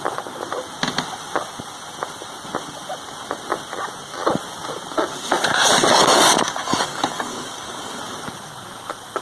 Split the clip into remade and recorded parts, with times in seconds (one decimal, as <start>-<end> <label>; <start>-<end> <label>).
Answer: 0.0-6.0 recorded; 6.0-8.0 remade; 8.0-9.2 recorded